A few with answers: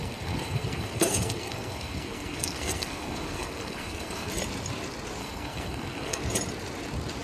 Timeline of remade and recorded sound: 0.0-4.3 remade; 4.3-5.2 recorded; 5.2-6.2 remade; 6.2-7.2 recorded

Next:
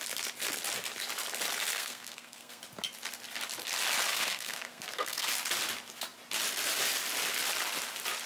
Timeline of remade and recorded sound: 0.0-1.7 recorded; 1.7-2.6 remade; 2.6-4.1 recorded; 4.1-5.3 remade; 5.3-8.3 recorded

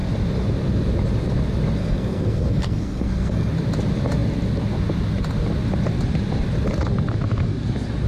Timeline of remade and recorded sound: 0.0-1.8 recorded; 1.8-3.5 remade; 3.5-8.1 recorded

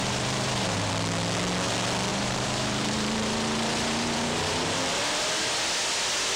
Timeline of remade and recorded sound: 0.0-0.9 remade; 0.9-2.1 recorded; 2.1-4.8 remade; 4.8-6.4 recorded

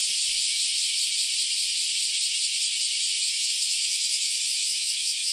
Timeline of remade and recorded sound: 0.0-3.2 recorded; 3.2-5.3 remade

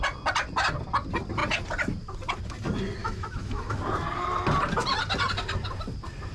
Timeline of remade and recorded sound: 0.0-3.0 recorded; 3.0-3.8 remade; 3.8-6.3 recorded